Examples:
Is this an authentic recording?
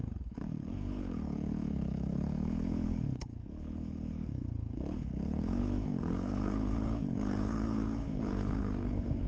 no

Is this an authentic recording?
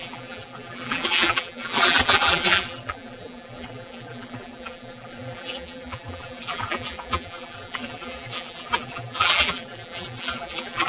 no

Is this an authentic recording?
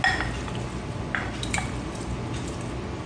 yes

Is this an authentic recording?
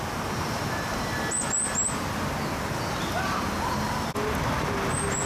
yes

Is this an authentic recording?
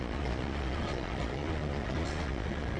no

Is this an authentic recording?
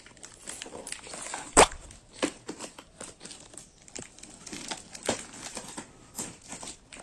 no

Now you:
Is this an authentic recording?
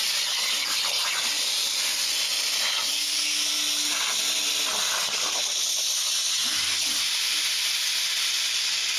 yes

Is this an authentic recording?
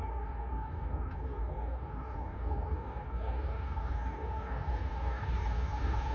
no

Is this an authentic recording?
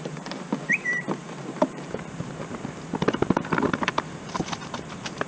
no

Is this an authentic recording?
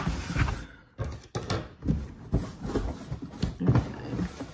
yes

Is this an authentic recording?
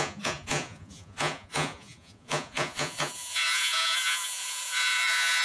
no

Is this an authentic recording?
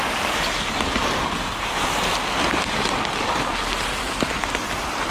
yes